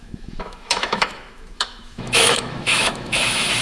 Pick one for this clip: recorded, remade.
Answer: remade